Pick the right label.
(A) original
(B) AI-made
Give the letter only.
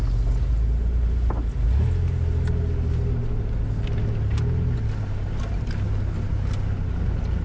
A